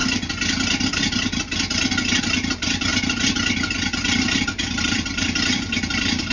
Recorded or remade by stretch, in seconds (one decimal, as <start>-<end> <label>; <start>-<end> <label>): 0.0-2.2 recorded; 2.2-2.9 remade; 2.9-4.8 recorded; 4.8-6.3 remade